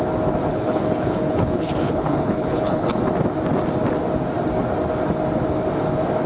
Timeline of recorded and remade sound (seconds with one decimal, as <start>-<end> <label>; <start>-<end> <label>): 0.0-0.5 recorded; 0.5-3.0 remade; 3.0-6.3 recorded